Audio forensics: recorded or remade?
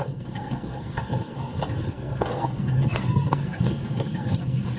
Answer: remade